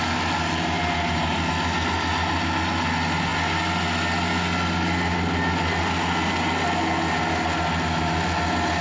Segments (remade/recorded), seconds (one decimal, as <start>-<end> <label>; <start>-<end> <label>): 0.0-8.8 recorded

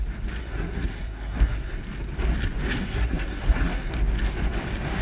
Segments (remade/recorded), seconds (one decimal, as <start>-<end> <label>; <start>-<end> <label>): 0.0-0.4 recorded; 0.4-1.8 remade; 1.8-2.8 recorded; 2.8-3.9 remade; 3.9-5.0 recorded

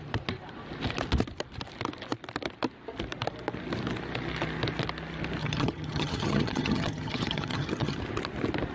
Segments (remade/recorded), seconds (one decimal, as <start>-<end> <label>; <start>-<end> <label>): 0.0-5.4 recorded; 5.4-8.0 remade; 8.0-8.7 recorded

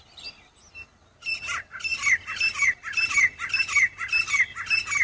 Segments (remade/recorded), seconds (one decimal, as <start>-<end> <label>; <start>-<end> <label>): 0.0-5.0 recorded

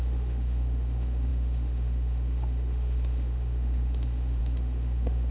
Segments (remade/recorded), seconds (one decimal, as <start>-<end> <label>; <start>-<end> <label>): 0.0-5.3 remade